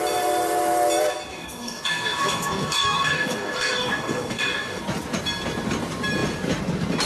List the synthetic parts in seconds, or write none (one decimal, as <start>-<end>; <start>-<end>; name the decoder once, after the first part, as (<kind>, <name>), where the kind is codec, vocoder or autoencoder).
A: 1.3-4.8 (codec, DAC)